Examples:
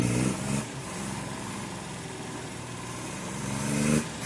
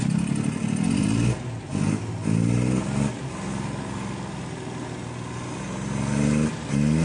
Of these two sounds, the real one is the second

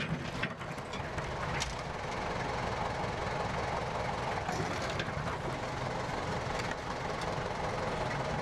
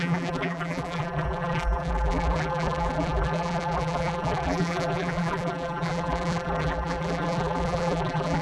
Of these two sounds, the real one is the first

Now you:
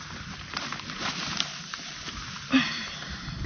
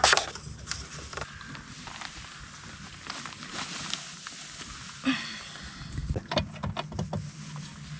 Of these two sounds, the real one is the second